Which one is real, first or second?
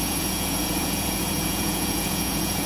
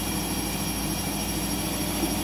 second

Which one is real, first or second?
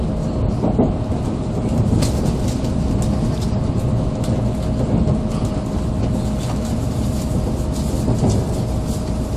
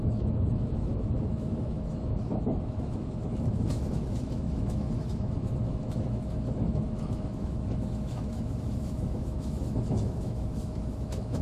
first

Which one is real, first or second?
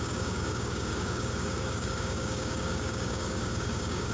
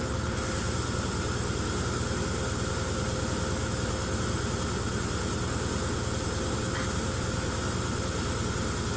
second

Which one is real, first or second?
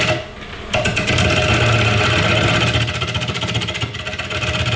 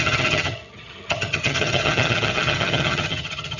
first